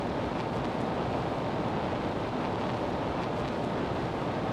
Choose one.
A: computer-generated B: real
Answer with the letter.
B